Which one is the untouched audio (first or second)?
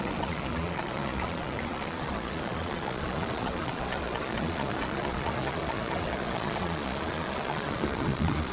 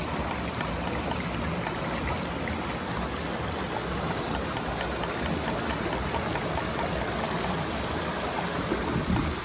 second